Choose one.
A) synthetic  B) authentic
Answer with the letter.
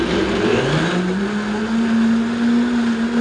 B